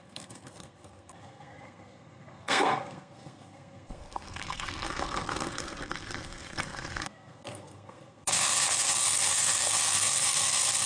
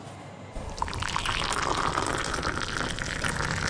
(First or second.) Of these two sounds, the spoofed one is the first